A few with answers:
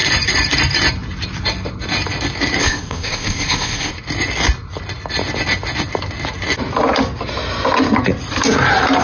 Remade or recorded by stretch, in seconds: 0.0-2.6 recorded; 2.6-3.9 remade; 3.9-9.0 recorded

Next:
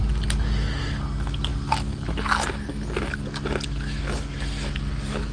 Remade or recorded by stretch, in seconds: 0.0-5.3 recorded

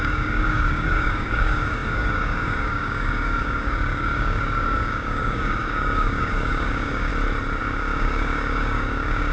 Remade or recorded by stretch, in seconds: 0.0-7.1 remade; 7.1-7.6 recorded; 7.6-9.3 remade

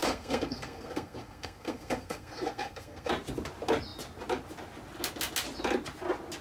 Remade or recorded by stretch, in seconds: 0.0-3.1 remade; 3.1-6.4 recorded

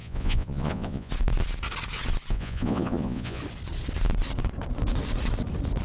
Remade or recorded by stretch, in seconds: 0.0-1.1 remade; 1.1-2.3 recorded; 2.3-3.4 remade; 3.4-5.8 recorded

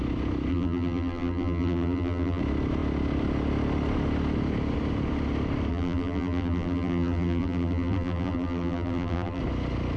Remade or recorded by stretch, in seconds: 0.0-0.5 recorded; 0.5-2.4 remade; 2.4-5.7 recorded; 5.7-9.4 remade; 9.4-10.0 recorded

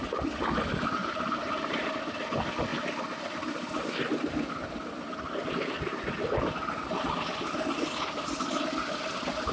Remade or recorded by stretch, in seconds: 0.0-1.0 recorded; 1.0-1.9 remade; 1.9-9.5 recorded